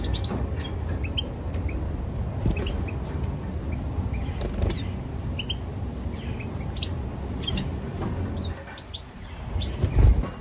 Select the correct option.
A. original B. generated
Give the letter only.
A